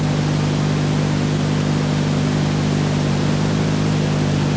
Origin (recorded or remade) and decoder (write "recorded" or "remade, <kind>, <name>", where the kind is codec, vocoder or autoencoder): recorded